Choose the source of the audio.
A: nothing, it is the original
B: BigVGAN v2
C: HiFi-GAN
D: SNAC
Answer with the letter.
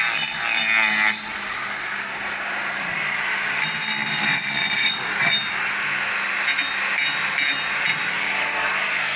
A